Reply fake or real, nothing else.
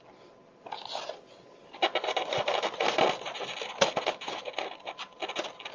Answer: real